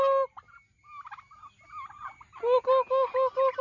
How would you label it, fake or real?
real